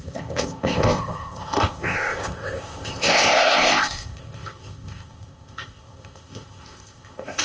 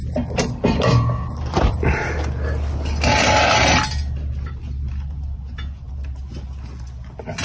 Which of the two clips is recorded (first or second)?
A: second